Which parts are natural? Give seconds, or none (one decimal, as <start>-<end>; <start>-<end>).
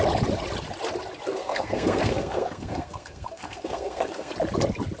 0.0-1.3; 4.3-5.0